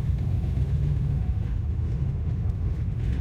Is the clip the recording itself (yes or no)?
no